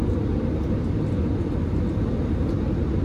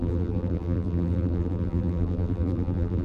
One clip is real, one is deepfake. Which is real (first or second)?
first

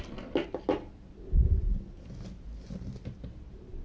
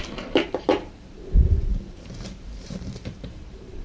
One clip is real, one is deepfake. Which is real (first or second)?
first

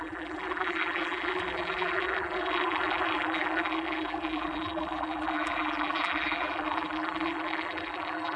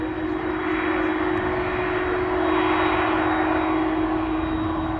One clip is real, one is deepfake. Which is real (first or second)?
second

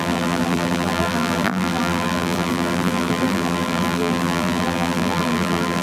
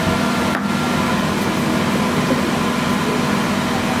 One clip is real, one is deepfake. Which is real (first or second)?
second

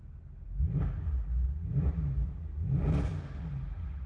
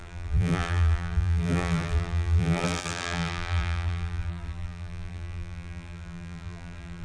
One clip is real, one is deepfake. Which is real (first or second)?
first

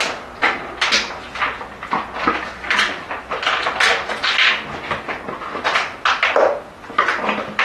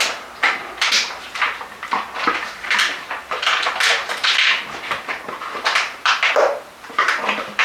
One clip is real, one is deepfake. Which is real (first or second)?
first